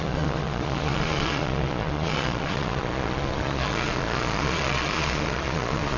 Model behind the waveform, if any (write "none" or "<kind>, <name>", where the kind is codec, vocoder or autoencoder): vocoder, Vocos